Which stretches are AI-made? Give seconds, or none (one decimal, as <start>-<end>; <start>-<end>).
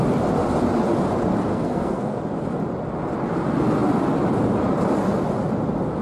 1.5-2.2